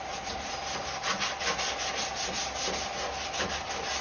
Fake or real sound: real